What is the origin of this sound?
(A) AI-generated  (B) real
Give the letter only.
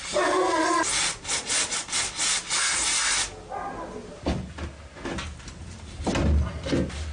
B